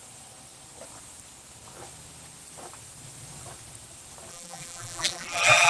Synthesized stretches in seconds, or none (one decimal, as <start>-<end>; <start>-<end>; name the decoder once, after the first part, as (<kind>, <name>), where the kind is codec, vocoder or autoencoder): 4.3-5.7 (vocoder, BigVGAN v2)